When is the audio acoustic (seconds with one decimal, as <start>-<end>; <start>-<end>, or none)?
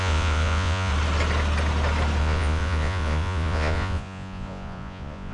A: 0.9-2.2